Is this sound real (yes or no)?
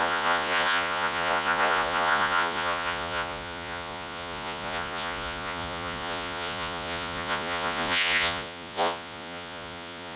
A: no